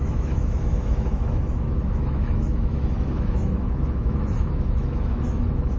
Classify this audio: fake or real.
fake